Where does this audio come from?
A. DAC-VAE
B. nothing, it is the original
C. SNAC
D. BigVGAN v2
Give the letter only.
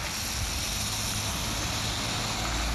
B